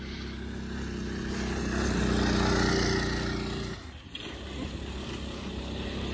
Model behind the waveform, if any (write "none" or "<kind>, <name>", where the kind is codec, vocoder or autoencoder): none